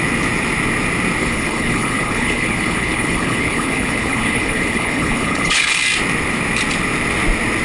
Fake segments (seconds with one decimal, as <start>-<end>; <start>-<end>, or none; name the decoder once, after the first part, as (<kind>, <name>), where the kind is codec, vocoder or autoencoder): 1.2-5.8 (codec, HILCodec)